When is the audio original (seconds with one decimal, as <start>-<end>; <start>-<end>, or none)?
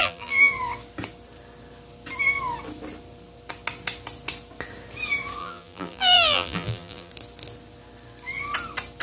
0.5-5.4; 7.1-9.0